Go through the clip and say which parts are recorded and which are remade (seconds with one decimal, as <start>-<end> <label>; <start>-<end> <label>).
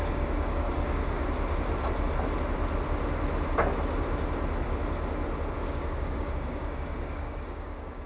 0.0-1.2 remade; 1.2-5.5 recorded; 5.5-8.1 remade